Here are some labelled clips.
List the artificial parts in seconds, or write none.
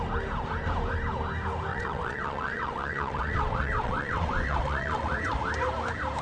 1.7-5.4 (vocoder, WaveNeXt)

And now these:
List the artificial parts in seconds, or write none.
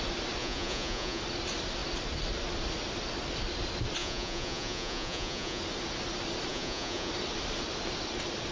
0.4-1.2 (vocoder, Vocos); 4.0-5.6; 6.5-7.1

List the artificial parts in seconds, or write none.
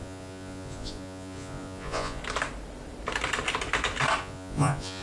0.0-2.2 (vocoder, Vocos); 4.2-5.0